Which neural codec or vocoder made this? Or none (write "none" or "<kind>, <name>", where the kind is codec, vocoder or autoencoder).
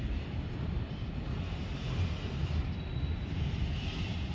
none